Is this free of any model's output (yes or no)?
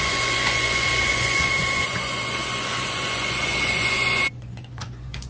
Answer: no